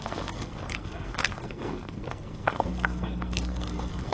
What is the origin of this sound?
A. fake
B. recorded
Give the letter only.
A